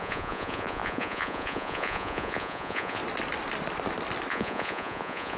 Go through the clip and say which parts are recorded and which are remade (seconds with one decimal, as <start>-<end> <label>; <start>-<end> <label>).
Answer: 0.0-3.0 remade; 3.0-4.3 recorded; 4.3-5.4 remade

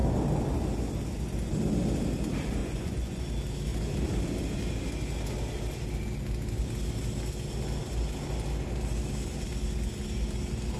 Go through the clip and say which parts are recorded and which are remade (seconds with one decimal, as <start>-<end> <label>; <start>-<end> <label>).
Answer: 0.0-2.6 recorded; 2.6-3.2 remade; 3.2-10.8 recorded